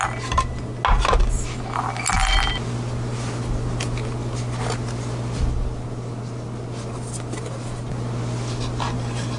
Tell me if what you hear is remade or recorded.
recorded